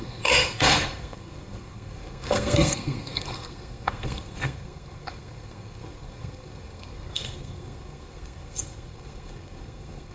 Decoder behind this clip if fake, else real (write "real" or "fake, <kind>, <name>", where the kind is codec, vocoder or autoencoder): fake, codec, SNAC